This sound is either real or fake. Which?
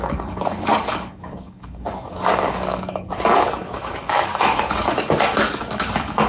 fake